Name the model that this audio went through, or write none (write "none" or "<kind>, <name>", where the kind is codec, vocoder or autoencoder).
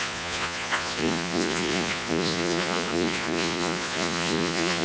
vocoder, Vocos